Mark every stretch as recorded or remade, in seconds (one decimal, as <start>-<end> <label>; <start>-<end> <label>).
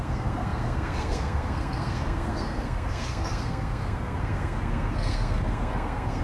0.0-6.2 remade